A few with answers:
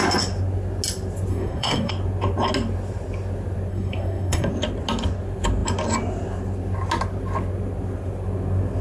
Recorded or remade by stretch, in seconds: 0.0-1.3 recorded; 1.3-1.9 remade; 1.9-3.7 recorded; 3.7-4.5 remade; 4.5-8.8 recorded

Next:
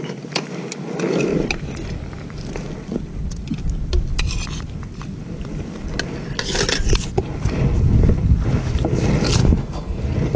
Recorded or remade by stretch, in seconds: 0.0-9.4 recorded; 9.4-10.0 remade; 10.0-10.4 recorded

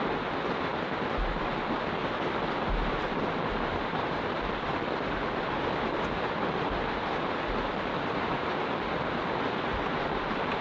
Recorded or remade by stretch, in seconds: 0.0-10.6 recorded

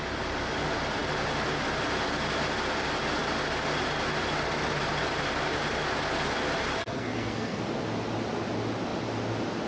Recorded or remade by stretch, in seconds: 0.0-6.8 recorded; 6.8-7.6 remade; 7.6-9.7 recorded

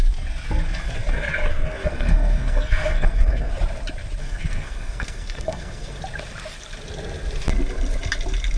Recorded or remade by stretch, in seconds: 0.0-1.5 recorded; 1.5-3.5 remade; 3.5-4.2 recorded; 4.2-6.0 remade; 6.0-8.6 recorded

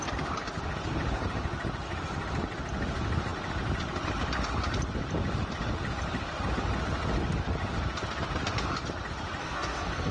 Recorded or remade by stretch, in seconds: 0.0-9.4 recorded; 9.4-10.1 remade